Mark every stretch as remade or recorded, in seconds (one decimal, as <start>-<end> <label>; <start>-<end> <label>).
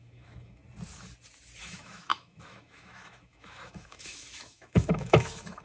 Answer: 0.0-0.6 remade; 0.6-1.6 recorded; 1.6-5.6 remade